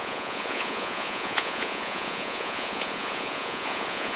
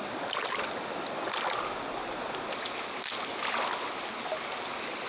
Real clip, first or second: second